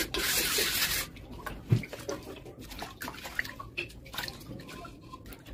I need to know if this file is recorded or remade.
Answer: recorded